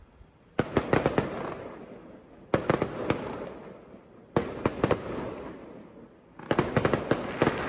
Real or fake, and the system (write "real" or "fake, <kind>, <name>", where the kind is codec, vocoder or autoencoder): real